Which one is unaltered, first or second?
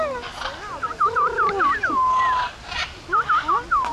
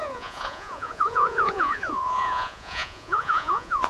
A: first